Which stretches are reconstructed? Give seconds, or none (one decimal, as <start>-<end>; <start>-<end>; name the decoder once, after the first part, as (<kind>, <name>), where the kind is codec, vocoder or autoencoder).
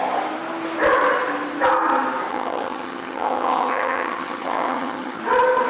2.3-5.2 (vocoder, HiFi-GAN)